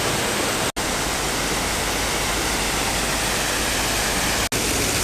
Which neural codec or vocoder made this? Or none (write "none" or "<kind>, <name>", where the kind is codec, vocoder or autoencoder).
none